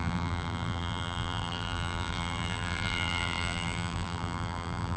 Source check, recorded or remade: remade